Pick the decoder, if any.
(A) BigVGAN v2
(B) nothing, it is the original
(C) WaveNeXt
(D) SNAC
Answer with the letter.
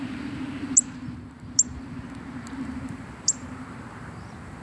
A